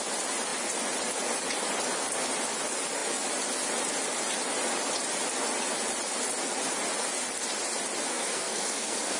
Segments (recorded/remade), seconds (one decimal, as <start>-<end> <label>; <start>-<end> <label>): 0.0-8.1 recorded; 8.1-9.2 remade